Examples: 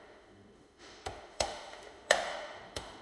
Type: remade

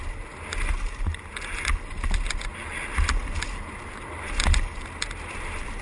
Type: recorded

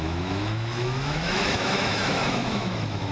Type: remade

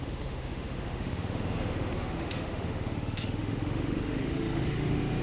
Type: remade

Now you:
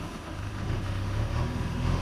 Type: remade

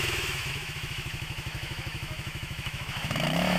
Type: remade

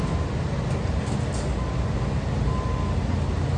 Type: recorded